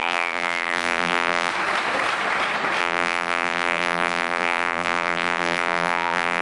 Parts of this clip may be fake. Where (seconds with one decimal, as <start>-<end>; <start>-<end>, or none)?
0.0-1.5; 2.8-6.4